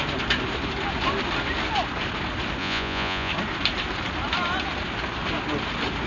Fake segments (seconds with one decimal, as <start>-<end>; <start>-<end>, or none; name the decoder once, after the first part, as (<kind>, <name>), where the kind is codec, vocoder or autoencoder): 2.6-3.3 (vocoder, Vocos)